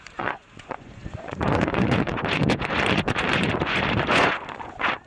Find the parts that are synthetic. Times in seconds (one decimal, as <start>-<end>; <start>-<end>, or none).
0.0-5.1